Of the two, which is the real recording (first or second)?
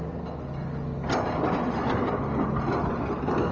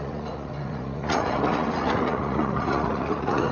first